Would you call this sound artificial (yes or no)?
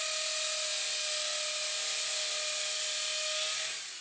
no